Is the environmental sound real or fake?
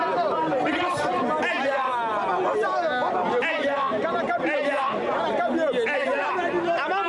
real